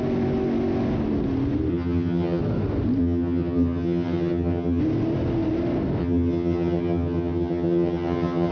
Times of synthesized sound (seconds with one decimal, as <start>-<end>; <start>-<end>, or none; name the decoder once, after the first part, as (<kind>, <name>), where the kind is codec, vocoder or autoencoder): 1.7-2.4 (vocoder, HiFi-GAN); 3.0-4.8; 6.0-8.5